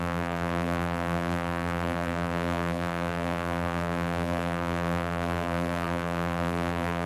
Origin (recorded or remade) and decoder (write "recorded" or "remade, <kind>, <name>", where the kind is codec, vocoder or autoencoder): remade, vocoder, BigVGAN v2